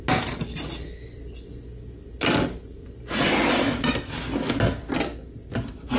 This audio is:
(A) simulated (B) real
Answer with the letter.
B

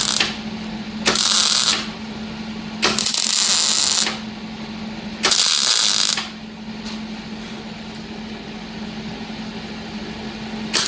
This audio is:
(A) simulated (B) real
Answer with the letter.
B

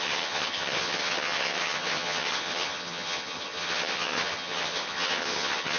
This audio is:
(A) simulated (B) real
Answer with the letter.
A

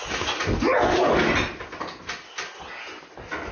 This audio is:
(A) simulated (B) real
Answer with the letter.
B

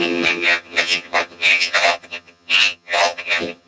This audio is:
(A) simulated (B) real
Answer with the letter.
A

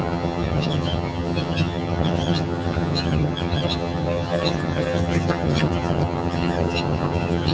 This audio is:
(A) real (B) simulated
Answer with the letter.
B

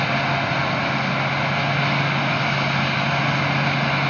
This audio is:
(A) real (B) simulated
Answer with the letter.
A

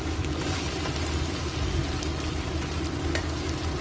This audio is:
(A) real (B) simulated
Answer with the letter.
A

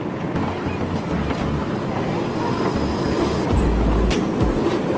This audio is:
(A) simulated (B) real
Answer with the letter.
B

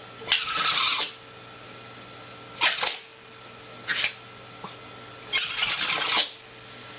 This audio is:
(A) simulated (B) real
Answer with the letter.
B